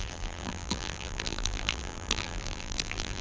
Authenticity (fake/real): fake